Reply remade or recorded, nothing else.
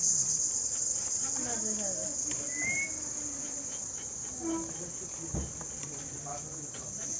recorded